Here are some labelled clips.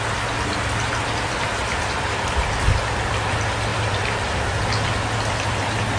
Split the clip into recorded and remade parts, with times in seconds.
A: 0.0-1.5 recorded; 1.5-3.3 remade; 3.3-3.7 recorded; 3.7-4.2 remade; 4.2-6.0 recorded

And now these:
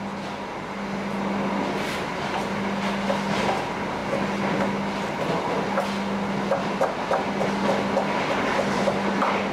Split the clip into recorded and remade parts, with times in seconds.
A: 0.0-9.5 recorded

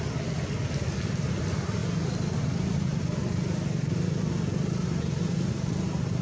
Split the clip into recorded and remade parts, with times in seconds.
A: 0.0-6.2 recorded

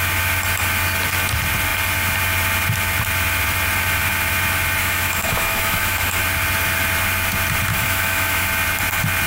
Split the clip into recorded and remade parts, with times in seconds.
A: 0.0-4.8 recorded; 4.8-6.2 remade; 6.2-7.7 recorded; 7.7-8.5 remade; 8.5-9.3 recorded

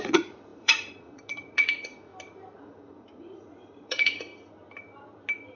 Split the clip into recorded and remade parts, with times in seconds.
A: 0.0-2.1 remade; 2.1-2.6 recorded; 2.6-4.3 remade; 4.3-5.6 recorded